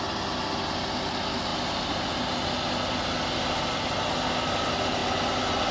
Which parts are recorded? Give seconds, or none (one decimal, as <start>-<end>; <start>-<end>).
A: 0.0-5.7